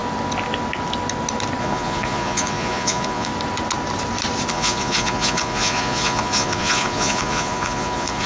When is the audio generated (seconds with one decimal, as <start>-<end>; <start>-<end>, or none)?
1.6-3.3; 4.5-8.3